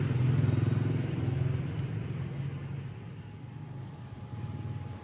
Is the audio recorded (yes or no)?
yes